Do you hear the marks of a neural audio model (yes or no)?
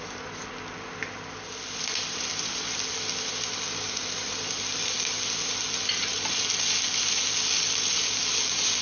no